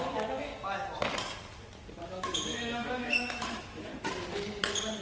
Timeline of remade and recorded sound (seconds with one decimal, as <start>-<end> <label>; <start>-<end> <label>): 0.0-0.5 remade; 0.5-2.1 recorded; 2.1-3.9 remade; 3.9-5.0 recorded